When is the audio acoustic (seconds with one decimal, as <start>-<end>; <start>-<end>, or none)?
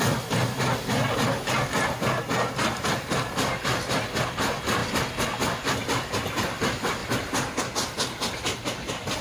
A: 0.0-9.2